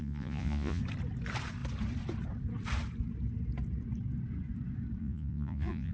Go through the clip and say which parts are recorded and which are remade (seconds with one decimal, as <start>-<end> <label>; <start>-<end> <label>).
0.0-0.8 remade; 0.8-5.0 recorded; 5.0-5.9 remade

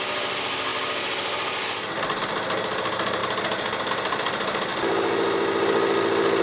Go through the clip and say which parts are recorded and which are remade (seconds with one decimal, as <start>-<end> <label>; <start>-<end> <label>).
0.0-6.4 recorded

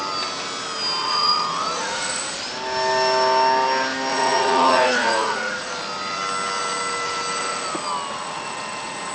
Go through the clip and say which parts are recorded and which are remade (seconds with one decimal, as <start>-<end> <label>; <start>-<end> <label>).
0.0-1.0 recorded; 1.0-2.2 remade; 2.2-4.1 recorded; 4.1-5.7 remade; 5.7-8.1 recorded; 8.1-9.1 remade

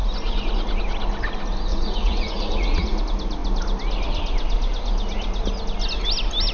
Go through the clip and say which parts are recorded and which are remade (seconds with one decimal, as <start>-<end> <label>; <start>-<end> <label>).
0.0-1.7 recorded; 1.7-3.0 remade; 3.0-6.5 recorded

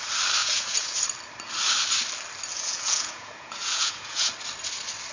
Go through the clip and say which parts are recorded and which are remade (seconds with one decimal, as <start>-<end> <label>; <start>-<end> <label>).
0.0-0.4 recorded; 0.4-1.0 remade; 1.0-2.5 recorded; 2.5-4.3 remade; 4.3-5.1 recorded

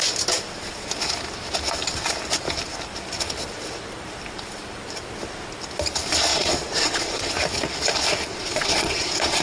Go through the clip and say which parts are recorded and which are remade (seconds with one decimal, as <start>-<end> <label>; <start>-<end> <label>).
0.0-6.3 recorded; 6.3-7.3 remade; 7.3-8.3 recorded; 8.3-9.4 remade

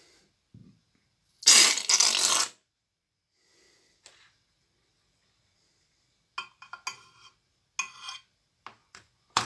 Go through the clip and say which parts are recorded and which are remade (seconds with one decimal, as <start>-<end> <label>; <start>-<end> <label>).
0.0-8.8 recorded; 8.8-9.5 remade

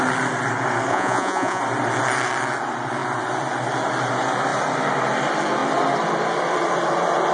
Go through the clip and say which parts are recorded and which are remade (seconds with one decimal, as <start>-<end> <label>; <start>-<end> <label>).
0.0-0.9 recorded; 0.9-1.6 remade; 1.6-7.3 recorded